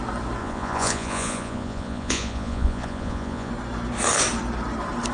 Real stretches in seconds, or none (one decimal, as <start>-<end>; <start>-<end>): 0.0-0.4; 3.5-5.1